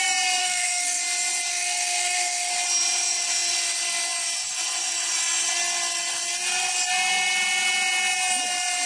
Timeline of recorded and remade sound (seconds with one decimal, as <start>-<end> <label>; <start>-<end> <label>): 0.0-0.4 recorded; 0.4-1.0 remade; 1.0-1.5 recorded; 1.5-2.5 remade; 2.5-8.9 recorded